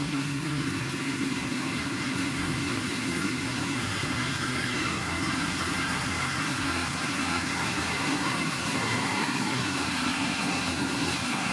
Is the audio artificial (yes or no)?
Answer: yes